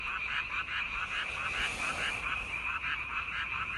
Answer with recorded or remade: remade